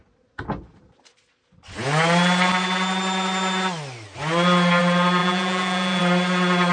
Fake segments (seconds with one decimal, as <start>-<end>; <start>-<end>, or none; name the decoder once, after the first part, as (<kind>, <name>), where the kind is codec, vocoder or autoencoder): 5.2-6.0 (vocoder, Vocos)